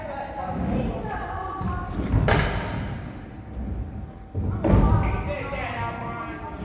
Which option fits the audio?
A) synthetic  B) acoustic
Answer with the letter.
B